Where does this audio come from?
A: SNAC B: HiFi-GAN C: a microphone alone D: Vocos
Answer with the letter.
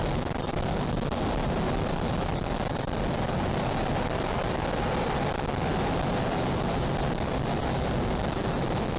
C